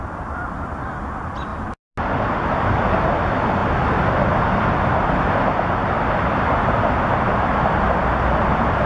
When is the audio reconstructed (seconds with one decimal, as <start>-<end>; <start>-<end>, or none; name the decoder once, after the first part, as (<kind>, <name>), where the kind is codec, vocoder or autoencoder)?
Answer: none